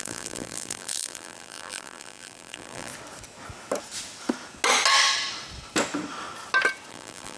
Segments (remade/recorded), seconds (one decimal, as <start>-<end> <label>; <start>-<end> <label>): 0.0-2.9 remade; 2.9-6.9 recorded; 6.9-7.4 remade